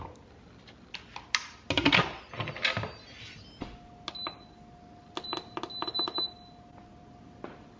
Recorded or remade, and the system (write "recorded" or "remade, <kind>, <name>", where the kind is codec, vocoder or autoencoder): recorded